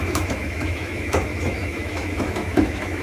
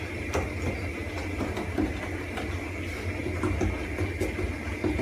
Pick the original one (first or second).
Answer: second